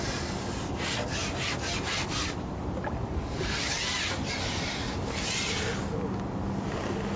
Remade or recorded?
recorded